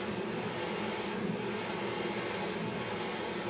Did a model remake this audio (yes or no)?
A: no